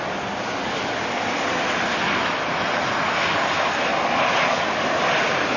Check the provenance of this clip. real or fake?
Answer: real